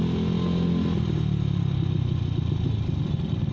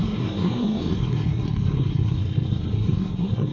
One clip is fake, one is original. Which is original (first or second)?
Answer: first